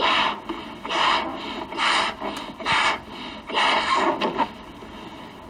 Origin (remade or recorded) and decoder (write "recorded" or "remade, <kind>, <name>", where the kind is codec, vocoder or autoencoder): recorded